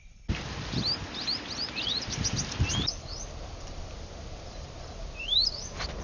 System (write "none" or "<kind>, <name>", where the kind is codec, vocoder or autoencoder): none